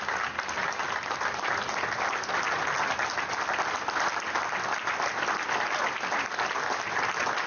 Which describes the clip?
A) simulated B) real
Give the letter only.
B